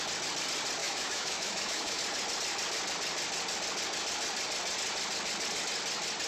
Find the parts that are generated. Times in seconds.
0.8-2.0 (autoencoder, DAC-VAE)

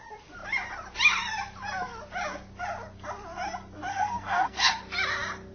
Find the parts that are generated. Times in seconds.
3.9-4.7 (codec, SNAC)

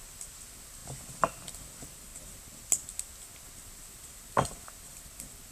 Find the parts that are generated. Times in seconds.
none

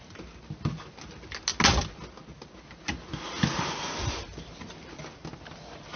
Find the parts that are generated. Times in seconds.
none

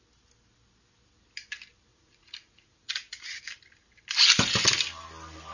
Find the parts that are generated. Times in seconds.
1.9-3.4 (vocoder, Vocos)